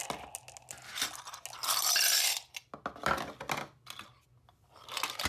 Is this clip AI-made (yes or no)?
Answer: no